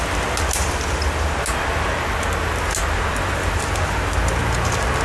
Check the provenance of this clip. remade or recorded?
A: recorded